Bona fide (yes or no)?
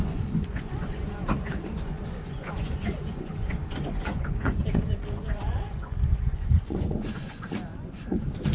no